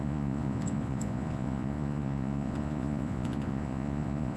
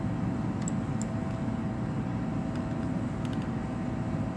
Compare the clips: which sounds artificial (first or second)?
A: first